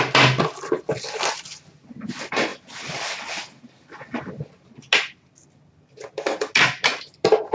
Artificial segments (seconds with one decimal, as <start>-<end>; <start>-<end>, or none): none